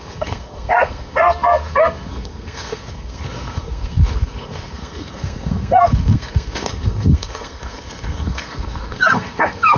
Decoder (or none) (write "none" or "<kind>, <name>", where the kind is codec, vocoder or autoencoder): codec, SNAC